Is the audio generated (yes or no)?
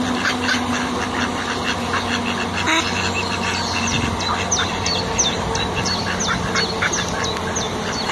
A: no